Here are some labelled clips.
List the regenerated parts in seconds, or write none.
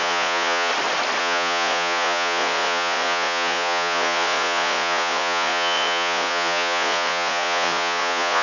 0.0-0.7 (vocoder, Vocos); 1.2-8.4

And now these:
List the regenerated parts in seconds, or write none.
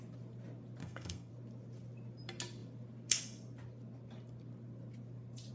0.8-1.3 (codec, SNAC)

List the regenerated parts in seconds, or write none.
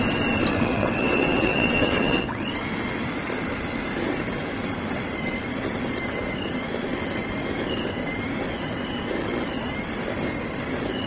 0.5-2.4 (vocoder, WaveNeXt)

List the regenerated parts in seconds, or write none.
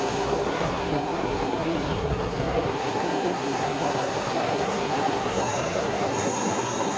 0.0-7.0 (codec, SNAC)